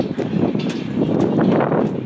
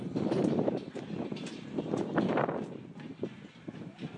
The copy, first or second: second